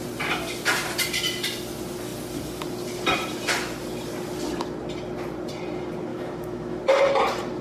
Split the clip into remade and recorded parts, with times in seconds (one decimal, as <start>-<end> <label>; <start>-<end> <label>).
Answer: 0.0-6.1 recorded; 6.1-6.8 remade; 6.8-7.6 recorded